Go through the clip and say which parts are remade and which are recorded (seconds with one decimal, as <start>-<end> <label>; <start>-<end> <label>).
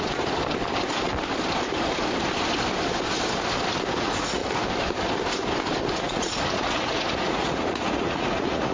0.0-0.4 remade; 0.4-4.0 recorded; 4.0-4.4 remade; 4.4-6.0 recorded; 6.0-8.7 remade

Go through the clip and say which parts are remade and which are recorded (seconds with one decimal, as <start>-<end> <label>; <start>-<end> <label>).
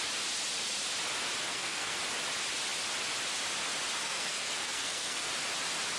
0.0-1.4 recorded; 1.4-2.0 remade; 2.0-4.0 recorded; 4.0-5.3 remade; 5.3-6.0 recorded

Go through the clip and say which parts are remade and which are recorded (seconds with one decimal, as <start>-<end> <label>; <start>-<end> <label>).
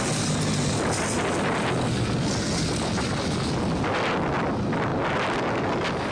0.0-6.1 recorded